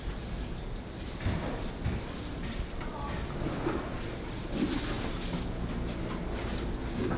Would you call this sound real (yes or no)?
yes